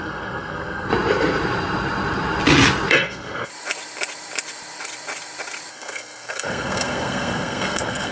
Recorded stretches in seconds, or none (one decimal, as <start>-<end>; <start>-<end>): 0.9-2.9; 3.5-5.7